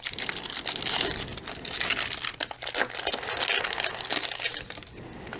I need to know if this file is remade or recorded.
recorded